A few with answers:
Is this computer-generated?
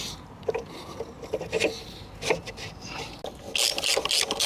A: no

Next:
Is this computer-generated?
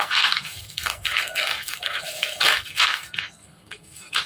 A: yes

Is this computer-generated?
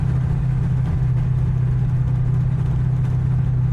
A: no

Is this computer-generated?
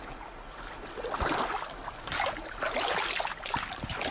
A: no